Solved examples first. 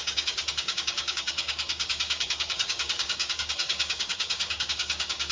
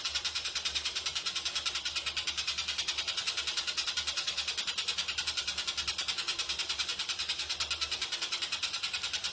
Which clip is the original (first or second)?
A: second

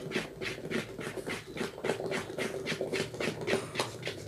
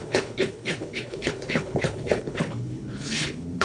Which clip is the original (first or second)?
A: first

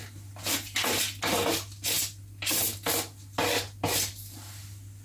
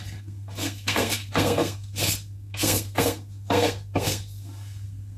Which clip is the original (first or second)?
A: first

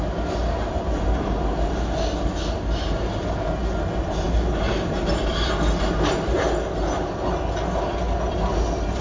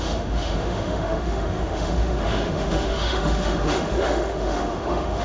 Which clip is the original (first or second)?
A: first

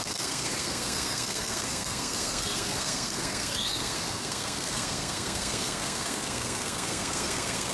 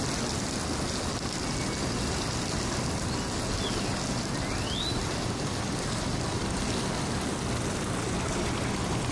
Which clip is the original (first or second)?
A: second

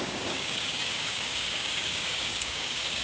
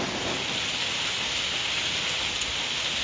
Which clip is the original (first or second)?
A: second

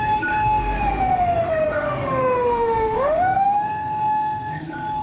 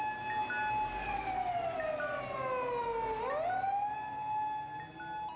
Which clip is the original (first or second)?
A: second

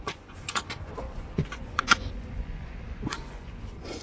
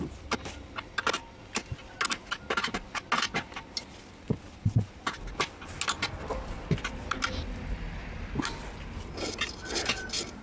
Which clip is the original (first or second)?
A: second